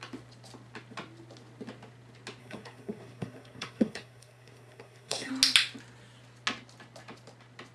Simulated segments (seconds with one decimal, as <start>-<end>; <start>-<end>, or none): 2.4-5.3